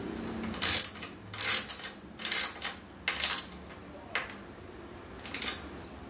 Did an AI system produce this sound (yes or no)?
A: no